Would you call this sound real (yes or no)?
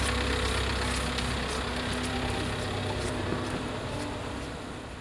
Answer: yes